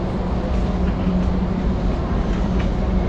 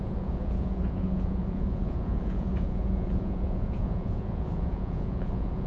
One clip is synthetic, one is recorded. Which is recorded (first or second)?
first